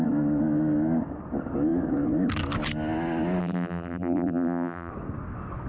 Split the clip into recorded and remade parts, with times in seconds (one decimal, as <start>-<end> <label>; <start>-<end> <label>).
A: 0.0-3.4 recorded; 3.4-4.9 remade; 4.9-5.7 recorded